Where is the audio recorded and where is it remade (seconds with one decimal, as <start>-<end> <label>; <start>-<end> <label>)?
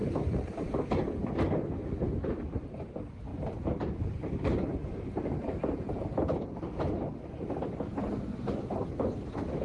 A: 0.0-1.3 remade; 1.3-3.3 recorded; 3.3-7.3 remade; 7.3-9.6 recorded